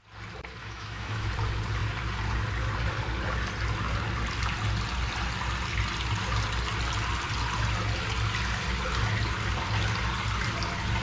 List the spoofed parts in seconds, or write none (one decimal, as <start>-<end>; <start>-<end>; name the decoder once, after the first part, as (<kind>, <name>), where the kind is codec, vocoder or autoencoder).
0.6-1.3 (autoencoder, DAC-VAE)